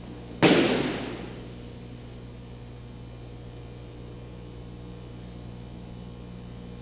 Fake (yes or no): no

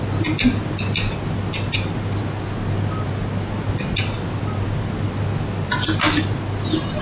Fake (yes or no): no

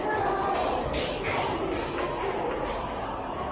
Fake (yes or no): no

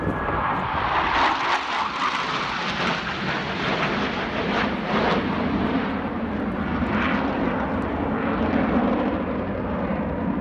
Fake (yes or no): no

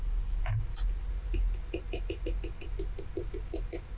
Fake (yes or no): no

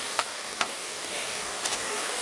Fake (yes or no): yes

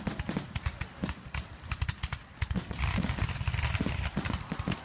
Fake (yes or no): no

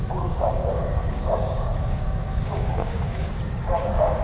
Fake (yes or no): yes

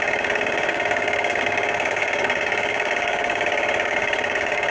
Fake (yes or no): yes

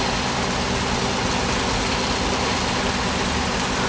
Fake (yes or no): no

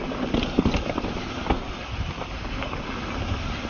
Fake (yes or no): no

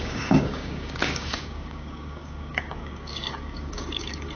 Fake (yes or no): yes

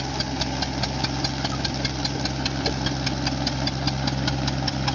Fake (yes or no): no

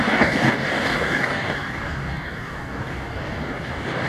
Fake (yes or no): yes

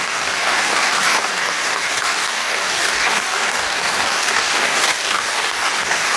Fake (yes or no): yes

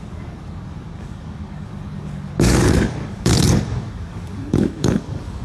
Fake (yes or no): yes